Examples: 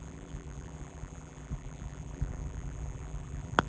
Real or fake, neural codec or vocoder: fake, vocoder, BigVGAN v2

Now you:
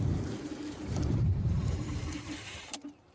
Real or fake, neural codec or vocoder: fake, vocoder, BigVGAN v2